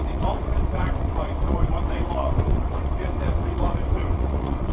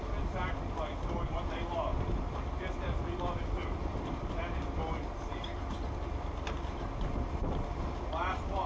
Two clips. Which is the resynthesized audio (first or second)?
first